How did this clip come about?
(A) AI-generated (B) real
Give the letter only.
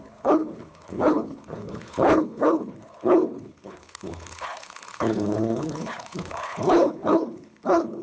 A